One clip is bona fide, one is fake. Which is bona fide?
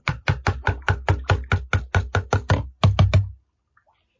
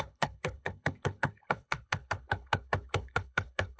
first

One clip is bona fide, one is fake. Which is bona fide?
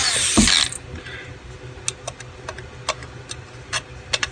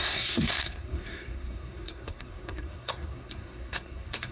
first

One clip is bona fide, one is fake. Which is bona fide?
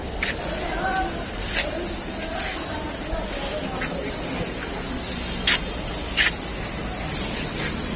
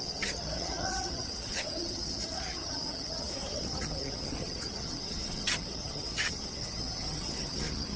first